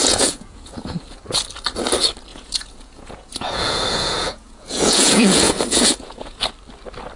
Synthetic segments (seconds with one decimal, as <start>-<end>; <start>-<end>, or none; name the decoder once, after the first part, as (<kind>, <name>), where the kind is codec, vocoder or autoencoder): 0.0-1.2 (vocoder, Vocos); 2.3-6.5